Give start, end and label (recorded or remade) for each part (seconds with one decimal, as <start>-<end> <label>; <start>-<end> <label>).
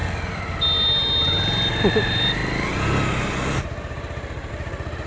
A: 0.0-5.1 recorded